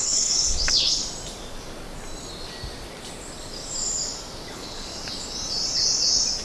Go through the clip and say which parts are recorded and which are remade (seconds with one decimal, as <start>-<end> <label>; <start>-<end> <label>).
0.0-1.0 remade; 1.0-4.5 recorded; 4.5-4.9 remade; 4.9-6.4 recorded